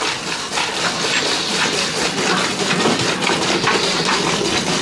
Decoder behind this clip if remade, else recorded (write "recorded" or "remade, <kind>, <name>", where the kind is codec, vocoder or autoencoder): recorded